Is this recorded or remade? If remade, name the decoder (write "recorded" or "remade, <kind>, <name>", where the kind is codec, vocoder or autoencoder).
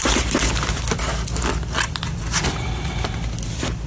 recorded